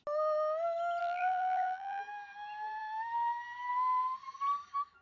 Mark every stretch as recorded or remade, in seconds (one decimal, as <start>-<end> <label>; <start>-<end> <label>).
0.0-1.0 recorded; 1.0-2.0 remade; 2.0-5.0 recorded